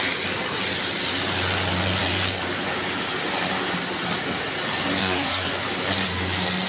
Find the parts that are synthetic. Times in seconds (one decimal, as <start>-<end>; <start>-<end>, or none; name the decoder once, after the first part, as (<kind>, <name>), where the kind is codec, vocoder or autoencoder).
5.0-5.5 (codec, SNAC)